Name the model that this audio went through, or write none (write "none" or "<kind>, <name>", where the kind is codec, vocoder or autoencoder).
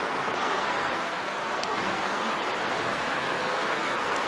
codec, SNAC